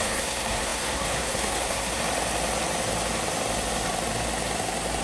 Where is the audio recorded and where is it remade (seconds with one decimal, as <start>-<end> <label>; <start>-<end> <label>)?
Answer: 0.0-2.0 remade; 2.0-5.0 recorded